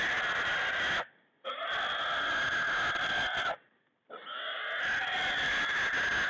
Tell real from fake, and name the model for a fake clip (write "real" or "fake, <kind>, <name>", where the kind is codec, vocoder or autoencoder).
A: real